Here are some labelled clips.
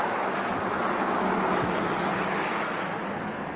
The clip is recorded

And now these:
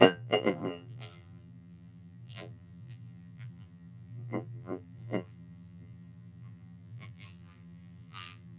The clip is remade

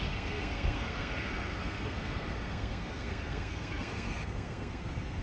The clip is remade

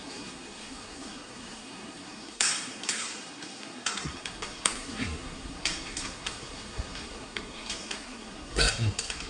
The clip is remade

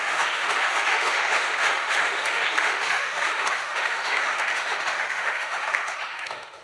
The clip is remade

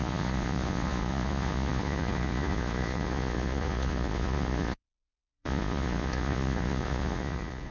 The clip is remade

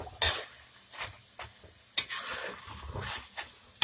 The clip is recorded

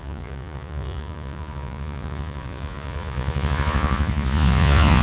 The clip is remade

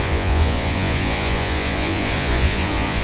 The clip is remade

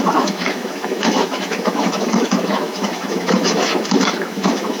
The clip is remade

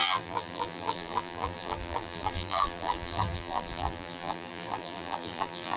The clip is remade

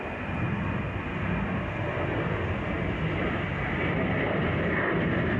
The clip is recorded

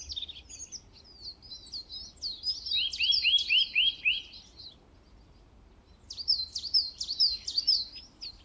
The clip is recorded